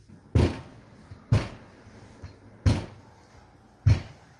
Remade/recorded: recorded